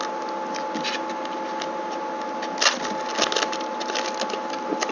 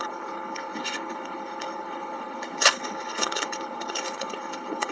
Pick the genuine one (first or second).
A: first